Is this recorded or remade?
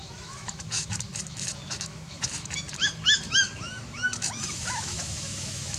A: remade